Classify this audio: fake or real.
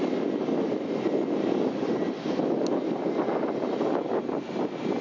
real